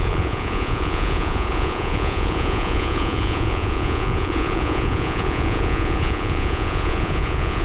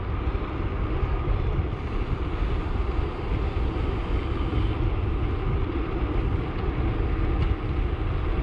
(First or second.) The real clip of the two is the second